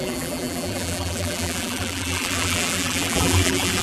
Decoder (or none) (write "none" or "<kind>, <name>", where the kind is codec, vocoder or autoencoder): vocoder, BigVGAN v2